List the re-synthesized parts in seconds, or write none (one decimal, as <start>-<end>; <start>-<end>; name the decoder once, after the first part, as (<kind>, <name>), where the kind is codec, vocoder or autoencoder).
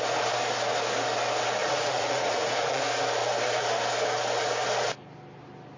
1.6-2.8 (vocoder, Vocos)